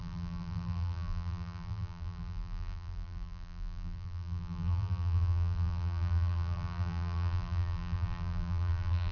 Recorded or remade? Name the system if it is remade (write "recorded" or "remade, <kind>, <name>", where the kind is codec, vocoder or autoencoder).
remade, vocoder, BigVGAN v2